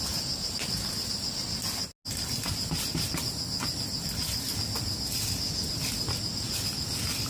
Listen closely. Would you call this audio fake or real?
real